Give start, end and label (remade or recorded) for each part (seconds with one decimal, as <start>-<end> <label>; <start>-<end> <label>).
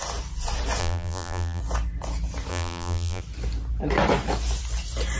0.0-0.8 recorded; 0.8-1.6 remade; 1.6-2.5 recorded; 2.5-3.2 remade; 3.2-5.2 recorded